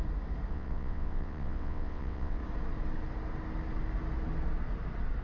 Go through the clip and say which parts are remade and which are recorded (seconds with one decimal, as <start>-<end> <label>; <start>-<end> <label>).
0.0-0.5 recorded; 0.5-2.4 remade; 2.4-5.2 recorded